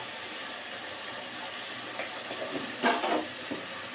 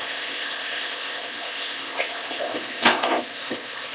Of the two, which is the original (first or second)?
first